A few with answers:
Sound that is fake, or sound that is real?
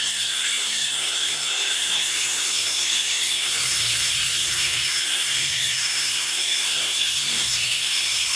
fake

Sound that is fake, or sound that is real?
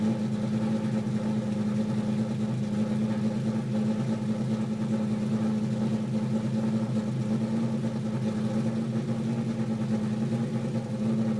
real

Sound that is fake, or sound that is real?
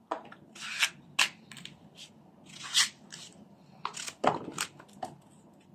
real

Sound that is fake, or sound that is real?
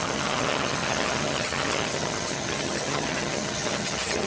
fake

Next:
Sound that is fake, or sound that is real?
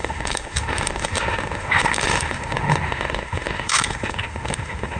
fake